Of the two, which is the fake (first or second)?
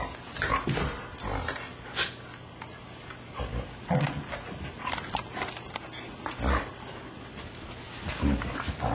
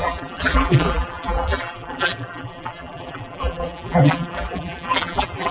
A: second